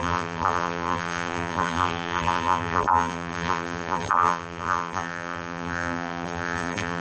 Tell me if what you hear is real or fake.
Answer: fake